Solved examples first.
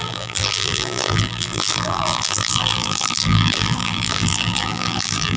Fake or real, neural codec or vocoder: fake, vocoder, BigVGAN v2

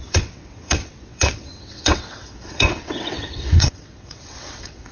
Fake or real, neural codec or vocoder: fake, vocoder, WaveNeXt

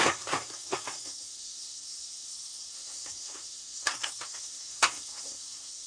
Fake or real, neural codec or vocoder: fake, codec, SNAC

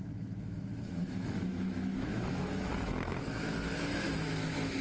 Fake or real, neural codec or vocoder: fake, autoencoder, DAC-VAE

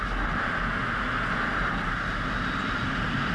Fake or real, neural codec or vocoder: real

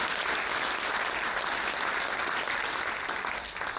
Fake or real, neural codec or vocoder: real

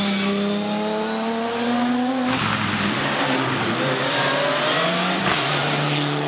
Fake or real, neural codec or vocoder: real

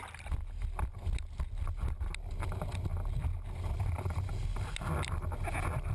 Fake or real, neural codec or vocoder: real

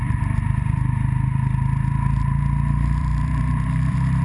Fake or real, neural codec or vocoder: fake, vocoder, BigVGAN v2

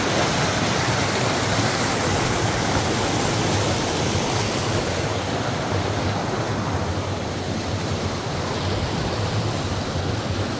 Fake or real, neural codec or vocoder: real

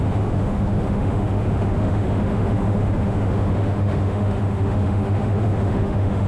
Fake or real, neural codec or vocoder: fake, autoencoder, DAC-VAE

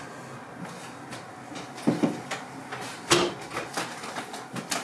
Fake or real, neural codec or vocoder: real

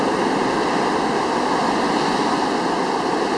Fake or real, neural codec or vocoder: real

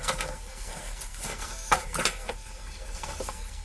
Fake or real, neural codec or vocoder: fake, codec, SNAC